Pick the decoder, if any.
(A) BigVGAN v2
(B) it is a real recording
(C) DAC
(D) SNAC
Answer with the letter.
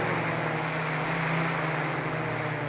B